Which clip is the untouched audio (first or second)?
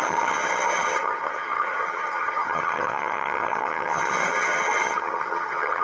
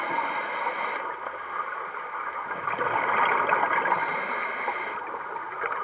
second